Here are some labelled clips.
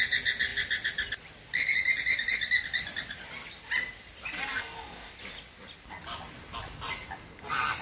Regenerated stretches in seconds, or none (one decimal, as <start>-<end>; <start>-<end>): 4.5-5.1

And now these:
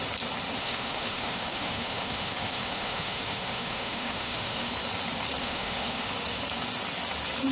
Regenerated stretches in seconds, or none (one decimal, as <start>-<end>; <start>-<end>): 0.6-4.7; 5.4-6.1

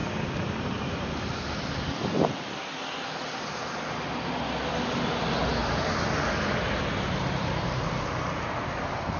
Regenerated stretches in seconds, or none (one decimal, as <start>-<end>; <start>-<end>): 0.0-3.0; 5.6-7.8

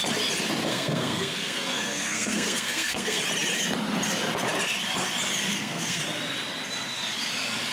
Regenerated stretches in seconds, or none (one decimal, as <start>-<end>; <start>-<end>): 0.7-3.2; 5.5-6.0

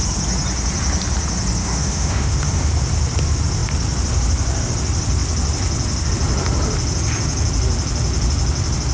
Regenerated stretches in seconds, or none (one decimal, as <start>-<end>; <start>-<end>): 1.6-2.7